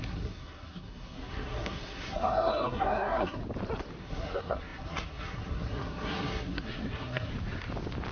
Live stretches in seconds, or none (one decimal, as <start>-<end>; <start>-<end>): 3.4-4.0; 7.3-8.1